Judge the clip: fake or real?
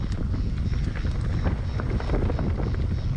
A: real